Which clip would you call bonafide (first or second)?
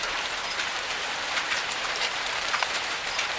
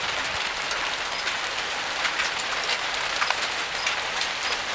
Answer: second